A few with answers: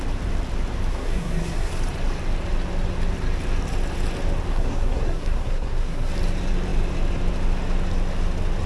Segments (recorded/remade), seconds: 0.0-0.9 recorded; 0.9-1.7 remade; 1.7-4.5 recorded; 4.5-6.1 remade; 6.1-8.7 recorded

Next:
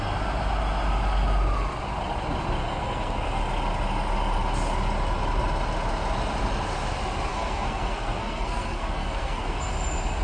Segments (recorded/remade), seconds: 0.0-2.6 recorded; 2.6-3.4 remade; 3.4-7.3 recorded; 7.3-9.7 remade; 9.7-10.2 recorded

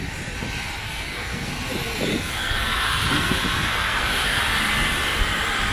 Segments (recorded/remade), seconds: 0.0-0.8 recorded; 0.8-1.5 remade; 1.5-2.1 recorded; 2.1-4.4 remade; 4.4-5.7 recorded

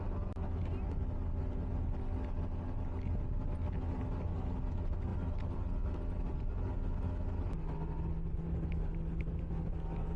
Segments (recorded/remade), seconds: 0.0-10.2 recorded

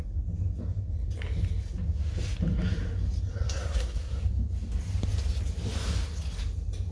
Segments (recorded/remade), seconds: 0.0-3.3 recorded; 3.3-4.1 remade; 4.1-6.9 recorded